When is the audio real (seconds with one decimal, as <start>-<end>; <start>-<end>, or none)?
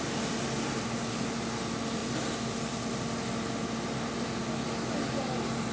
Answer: 0.0-5.7